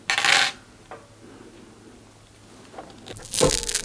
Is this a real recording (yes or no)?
yes